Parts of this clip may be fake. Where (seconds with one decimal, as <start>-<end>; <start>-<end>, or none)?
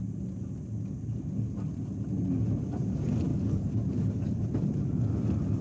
3.3-4.4